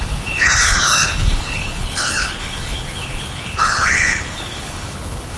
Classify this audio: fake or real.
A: fake